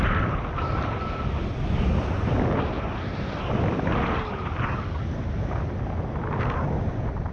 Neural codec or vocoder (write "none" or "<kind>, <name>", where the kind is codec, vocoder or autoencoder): none